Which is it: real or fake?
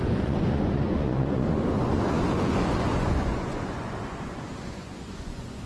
fake